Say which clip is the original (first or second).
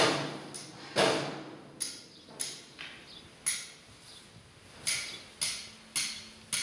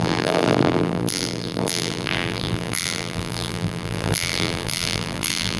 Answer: first